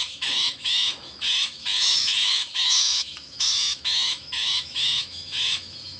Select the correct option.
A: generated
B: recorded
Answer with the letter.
A